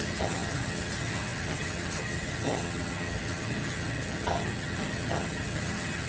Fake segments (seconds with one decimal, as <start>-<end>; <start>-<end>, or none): 0.0-6.1